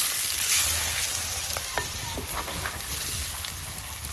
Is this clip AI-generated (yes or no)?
yes